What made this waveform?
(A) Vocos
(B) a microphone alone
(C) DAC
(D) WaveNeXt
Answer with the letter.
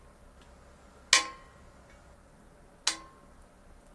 B